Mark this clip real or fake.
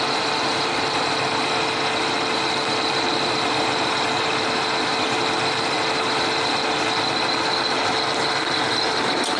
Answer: real